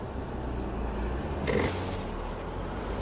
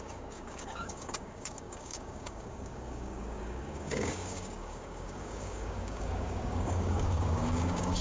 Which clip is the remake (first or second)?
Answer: second